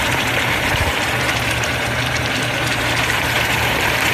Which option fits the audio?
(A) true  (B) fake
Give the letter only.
B